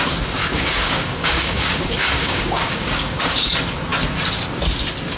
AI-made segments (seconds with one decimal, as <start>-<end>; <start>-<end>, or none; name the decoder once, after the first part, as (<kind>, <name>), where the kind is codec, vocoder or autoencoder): 0.4-3.5 (codec, DAC)